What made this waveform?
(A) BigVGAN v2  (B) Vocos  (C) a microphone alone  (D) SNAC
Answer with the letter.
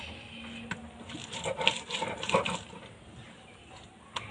C